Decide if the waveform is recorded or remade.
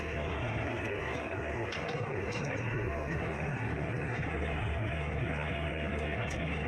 remade